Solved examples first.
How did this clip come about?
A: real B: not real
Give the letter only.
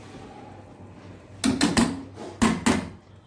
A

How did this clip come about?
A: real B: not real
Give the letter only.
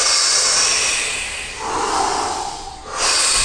A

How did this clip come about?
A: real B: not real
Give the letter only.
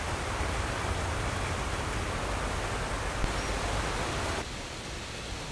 A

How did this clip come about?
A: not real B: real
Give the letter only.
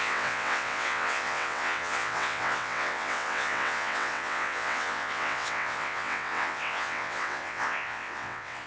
A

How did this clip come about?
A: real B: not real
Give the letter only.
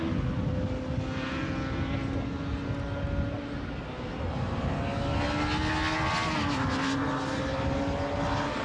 A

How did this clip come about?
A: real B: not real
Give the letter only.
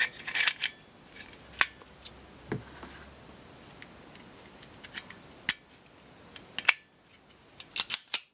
A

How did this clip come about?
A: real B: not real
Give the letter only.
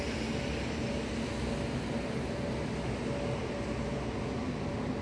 A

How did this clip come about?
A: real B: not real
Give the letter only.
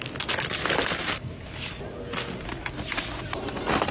A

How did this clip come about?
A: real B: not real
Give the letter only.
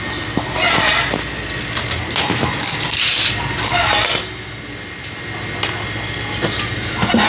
A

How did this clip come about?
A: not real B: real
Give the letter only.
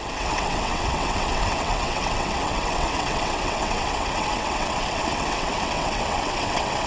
A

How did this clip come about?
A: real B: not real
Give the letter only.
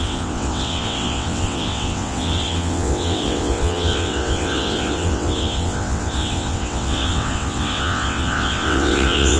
B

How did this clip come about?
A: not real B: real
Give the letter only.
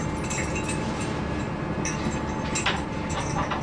B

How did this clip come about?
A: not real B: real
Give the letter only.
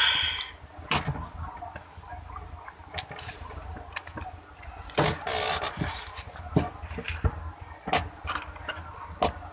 B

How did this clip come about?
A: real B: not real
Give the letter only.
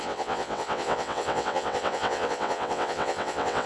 B